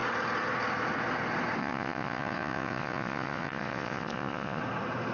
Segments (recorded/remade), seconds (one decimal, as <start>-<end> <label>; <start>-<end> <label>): 0.0-1.6 recorded; 1.6-4.6 remade; 4.6-5.1 recorded